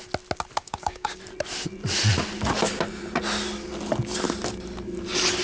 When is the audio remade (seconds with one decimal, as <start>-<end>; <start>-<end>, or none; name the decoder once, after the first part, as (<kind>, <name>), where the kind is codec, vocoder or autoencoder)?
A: 0.6-1.2 (codec, DAC)